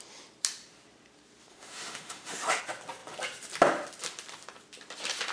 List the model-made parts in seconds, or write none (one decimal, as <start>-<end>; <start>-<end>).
1.5-2.6